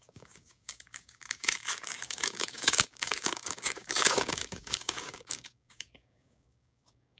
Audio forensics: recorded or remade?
remade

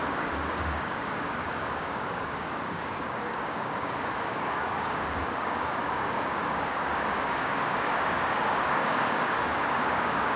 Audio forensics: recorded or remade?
remade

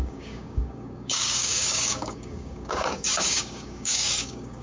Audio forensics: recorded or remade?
remade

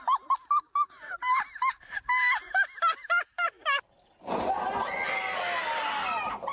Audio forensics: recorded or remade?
recorded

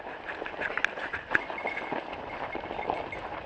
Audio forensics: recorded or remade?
recorded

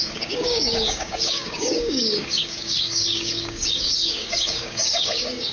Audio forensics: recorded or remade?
remade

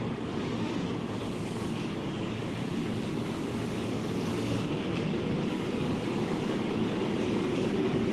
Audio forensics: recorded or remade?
remade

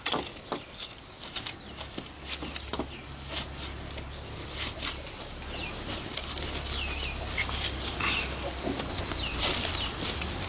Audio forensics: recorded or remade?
recorded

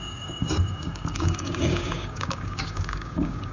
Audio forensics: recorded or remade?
remade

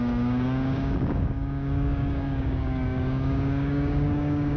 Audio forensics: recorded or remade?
remade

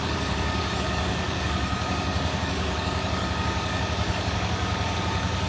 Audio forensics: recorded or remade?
remade